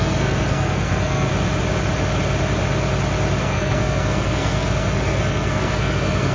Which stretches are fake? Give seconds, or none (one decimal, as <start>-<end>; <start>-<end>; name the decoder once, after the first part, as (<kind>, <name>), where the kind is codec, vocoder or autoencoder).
0.0-1.3 (codec, SNAC); 3.4-6.3